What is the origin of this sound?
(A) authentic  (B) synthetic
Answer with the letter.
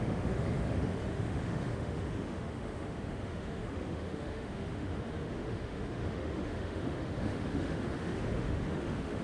B